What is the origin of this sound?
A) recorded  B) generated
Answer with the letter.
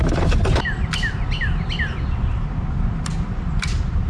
A